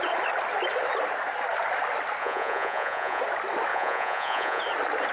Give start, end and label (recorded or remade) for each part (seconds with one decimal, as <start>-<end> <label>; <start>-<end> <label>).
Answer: 0.0-2.2 recorded; 2.2-3.2 remade; 3.2-3.7 recorded; 3.7-4.6 remade; 4.6-5.1 recorded

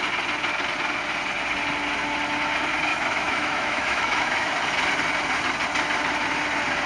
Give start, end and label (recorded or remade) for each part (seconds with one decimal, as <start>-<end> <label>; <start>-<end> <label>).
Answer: 0.0-2.9 recorded; 2.9-4.6 remade; 4.6-6.9 recorded

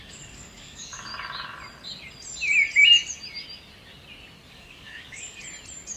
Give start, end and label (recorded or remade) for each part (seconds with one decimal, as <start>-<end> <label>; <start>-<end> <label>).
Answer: 0.0-1.1 remade; 1.1-4.5 recorded; 4.5-5.4 remade; 5.4-6.0 recorded

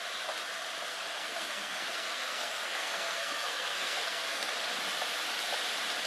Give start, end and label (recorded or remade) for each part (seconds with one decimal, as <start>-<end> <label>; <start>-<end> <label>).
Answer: 0.0-0.9 recorded; 0.9-4.5 remade; 4.5-6.1 recorded